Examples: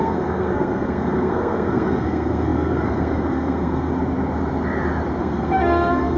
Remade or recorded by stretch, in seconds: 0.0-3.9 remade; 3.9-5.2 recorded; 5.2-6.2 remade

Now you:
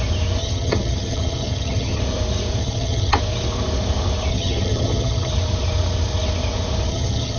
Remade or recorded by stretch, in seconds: 0.0-0.4 recorded; 0.4-2.0 remade; 2.0-2.6 recorded; 2.6-3.2 remade; 3.2-4.3 recorded; 4.3-5.3 remade; 5.3-6.9 recorded; 6.9-7.4 remade

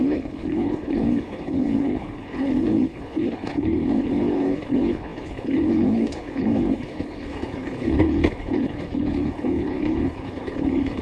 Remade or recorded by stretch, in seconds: 0.0-11.0 remade

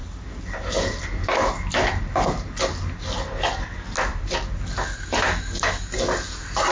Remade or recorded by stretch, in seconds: 0.0-6.7 recorded

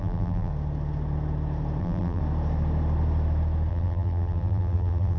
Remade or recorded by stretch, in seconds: 0.0-0.5 remade; 0.5-1.8 recorded; 1.8-2.2 remade; 2.2-3.7 recorded; 3.7-5.2 remade

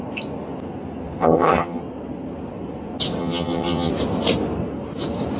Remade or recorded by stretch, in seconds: 0.0-1.2 recorded; 1.2-1.8 remade; 1.8-3.2 recorded; 3.2-3.9 remade; 3.9-5.4 recorded

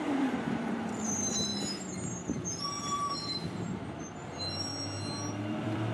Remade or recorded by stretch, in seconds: 0.0-1.5 remade; 1.5-2.6 recorded; 2.6-4.7 remade; 4.7-5.4 recorded; 5.4-5.9 remade

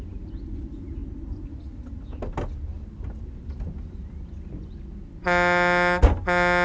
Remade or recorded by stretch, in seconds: 0.0-1.0 recorded; 1.0-1.5 remade; 1.5-6.6 recorded